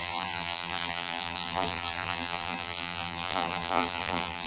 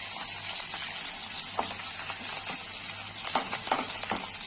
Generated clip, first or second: first